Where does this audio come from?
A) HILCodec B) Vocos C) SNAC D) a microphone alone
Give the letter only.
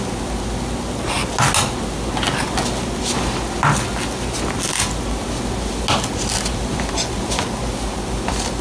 D